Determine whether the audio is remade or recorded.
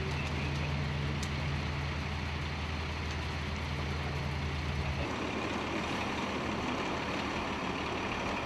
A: recorded